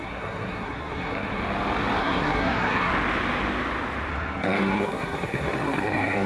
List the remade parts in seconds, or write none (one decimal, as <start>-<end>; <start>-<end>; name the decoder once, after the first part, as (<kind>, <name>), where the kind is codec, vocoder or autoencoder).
0.0-1.4 (codec, SNAC); 2.0-2.9; 4.1-6.3